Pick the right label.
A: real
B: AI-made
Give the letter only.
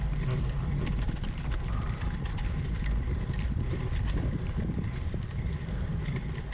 B